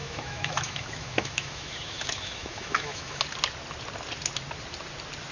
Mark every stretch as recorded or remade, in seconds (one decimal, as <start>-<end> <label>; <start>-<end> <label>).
0.0-3.2 remade; 3.2-5.3 recorded